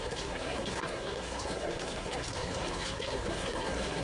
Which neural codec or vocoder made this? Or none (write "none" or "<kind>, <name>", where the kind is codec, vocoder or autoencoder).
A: codec, SNAC